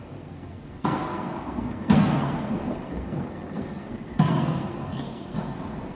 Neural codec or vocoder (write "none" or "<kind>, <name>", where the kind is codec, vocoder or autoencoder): codec, SNAC